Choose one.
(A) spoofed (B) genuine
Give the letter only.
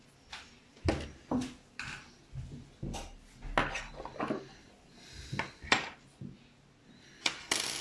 B